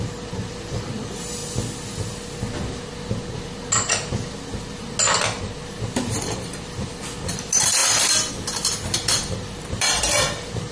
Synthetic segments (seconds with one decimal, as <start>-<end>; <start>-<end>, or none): 0.0-1.4; 5.9-10.7